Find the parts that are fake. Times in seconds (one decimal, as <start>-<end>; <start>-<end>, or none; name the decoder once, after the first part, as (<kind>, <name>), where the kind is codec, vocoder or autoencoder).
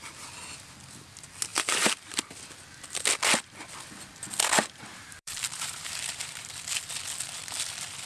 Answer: 1.5-2.1 (vocoder, BigVGAN v2); 4.9-6.5